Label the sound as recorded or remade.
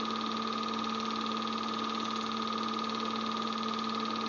recorded